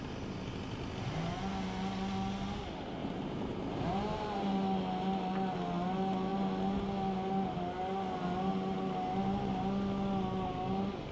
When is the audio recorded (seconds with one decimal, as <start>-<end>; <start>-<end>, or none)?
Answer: 0.0-3.0; 4.5-11.1

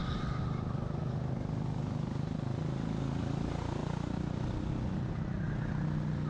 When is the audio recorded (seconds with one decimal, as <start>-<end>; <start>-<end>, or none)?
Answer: 0.0-6.3

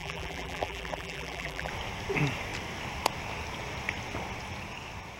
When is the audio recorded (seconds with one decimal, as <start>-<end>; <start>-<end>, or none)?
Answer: 1.7-5.2

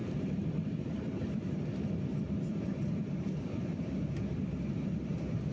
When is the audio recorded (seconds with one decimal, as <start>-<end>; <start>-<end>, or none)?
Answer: 1.0-5.5

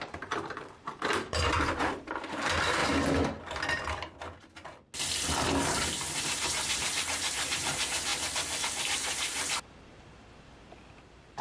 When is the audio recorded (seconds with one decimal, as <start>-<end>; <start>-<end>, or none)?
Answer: 2.8-6.2; 8.1-11.0

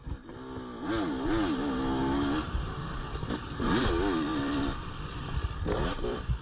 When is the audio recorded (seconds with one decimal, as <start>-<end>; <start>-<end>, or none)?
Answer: 0.0-4.3

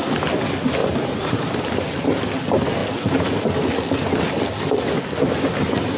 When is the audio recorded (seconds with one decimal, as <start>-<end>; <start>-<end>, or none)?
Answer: 0.0-0.8; 1.7-6.0